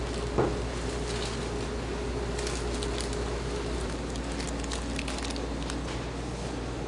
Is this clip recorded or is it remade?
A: recorded